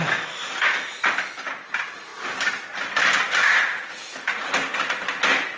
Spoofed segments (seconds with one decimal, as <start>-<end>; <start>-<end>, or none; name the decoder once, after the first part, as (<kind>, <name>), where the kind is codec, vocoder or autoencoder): none